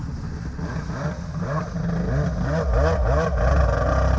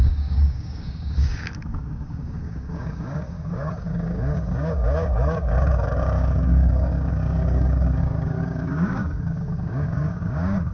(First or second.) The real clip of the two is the first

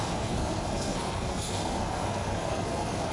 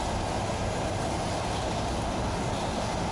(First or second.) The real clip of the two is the second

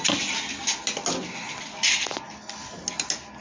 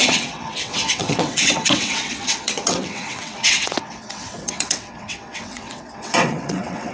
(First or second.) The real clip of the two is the first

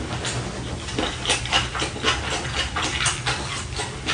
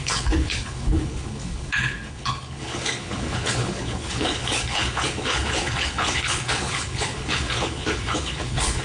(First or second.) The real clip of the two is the first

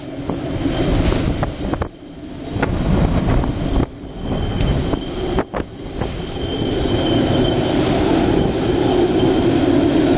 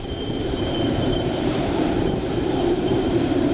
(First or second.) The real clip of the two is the first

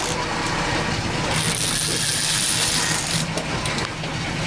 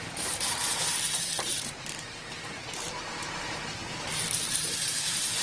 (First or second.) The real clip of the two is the first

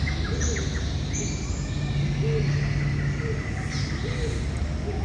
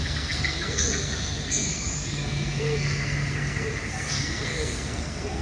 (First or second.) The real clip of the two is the first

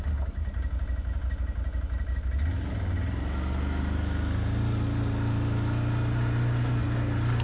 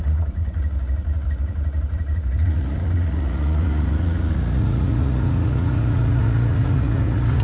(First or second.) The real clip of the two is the first